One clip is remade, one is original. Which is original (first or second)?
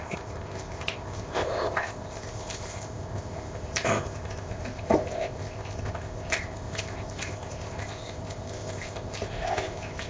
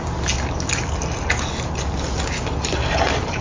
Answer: second